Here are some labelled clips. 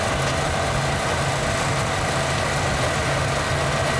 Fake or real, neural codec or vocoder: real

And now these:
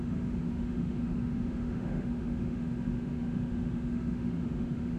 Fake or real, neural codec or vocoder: fake, autoencoder, DAC-VAE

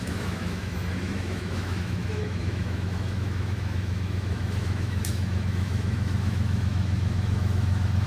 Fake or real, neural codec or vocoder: fake, autoencoder, DAC-VAE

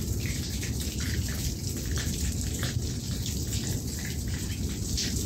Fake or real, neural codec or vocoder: real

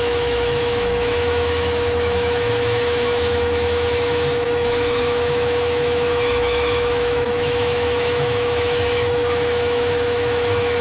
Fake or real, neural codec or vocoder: fake, autoencoder, DAC-VAE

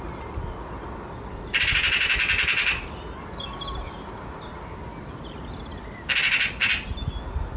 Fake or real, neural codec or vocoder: real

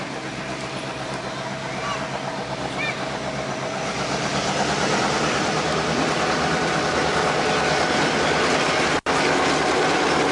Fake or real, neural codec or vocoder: real